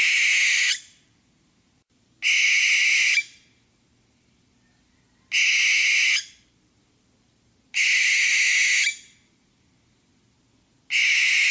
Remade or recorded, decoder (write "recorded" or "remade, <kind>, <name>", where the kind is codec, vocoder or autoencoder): recorded